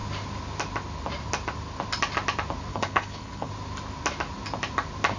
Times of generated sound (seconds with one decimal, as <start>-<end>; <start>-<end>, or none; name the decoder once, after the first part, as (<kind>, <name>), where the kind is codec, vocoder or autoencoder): 2.7-3.5 (codec, HILCodec)